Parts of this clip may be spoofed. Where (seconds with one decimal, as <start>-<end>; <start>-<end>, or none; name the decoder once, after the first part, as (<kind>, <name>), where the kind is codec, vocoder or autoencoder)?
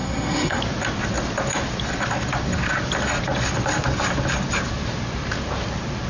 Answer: 0.0-0.6 (codec, SNAC)